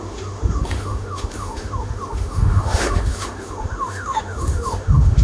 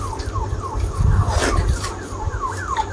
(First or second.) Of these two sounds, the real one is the second